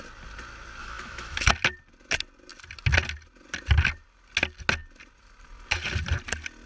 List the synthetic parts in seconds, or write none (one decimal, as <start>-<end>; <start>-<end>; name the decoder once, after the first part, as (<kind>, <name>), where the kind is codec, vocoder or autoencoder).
0.8-1.5 (autoencoder, DAC-VAE)